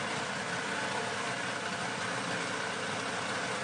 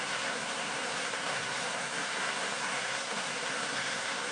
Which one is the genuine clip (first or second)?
first